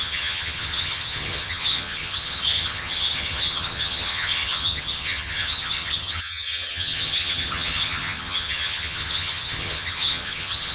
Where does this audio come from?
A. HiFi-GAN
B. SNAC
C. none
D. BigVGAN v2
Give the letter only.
A